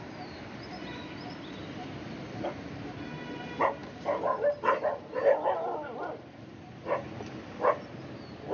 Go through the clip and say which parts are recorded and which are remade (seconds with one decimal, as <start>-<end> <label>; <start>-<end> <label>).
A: 0.0-3.8 remade; 3.8-4.7 recorded; 4.7-8.5 remade